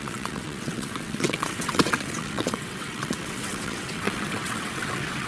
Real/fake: fake